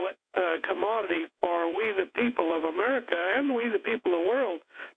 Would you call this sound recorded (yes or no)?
no